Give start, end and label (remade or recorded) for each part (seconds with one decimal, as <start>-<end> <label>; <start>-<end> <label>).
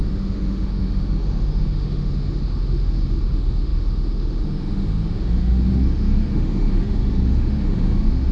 0.0-8.3 remade